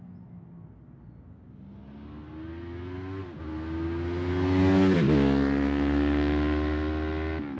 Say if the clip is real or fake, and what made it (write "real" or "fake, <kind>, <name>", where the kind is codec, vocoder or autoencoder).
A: real